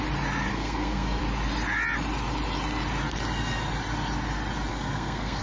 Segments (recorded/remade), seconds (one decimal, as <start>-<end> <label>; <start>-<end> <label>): 0.0-0.5 recorded; 0.5-1.2 remade; 1.2-4.7 recorded; 4.7-5.4 remade